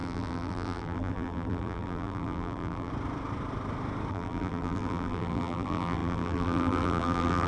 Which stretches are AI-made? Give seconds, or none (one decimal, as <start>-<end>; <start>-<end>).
0.0-2.9; 4.1-7.5